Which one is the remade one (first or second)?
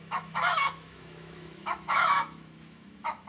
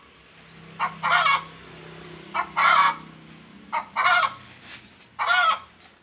first